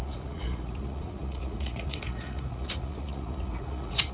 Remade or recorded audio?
remade